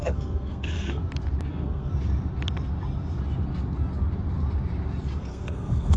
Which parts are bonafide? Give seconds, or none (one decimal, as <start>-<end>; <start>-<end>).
1.0-1.5; 1.9-5.2